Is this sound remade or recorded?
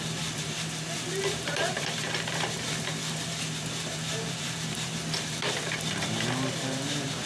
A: remade